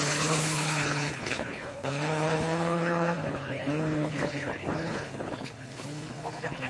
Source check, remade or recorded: remade